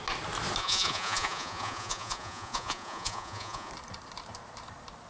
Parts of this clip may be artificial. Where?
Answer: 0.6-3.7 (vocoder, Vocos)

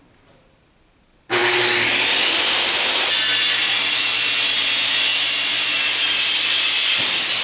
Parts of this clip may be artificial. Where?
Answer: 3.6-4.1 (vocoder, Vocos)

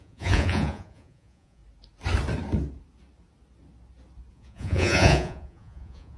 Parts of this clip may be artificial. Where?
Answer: 0.0-1.6 (vocoder, Vocos); 4.3-6.2

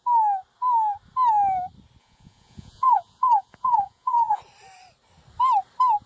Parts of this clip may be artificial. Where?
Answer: 2.0-4.4 (vocoder, Vocos)

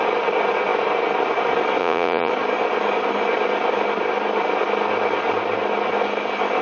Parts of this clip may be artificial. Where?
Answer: 1.8-2.3 (vocoder, Vocos)

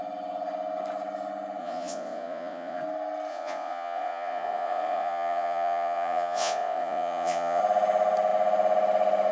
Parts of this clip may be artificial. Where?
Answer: 1.6-2.8 (vocoder, Vocos); 3.3-7.6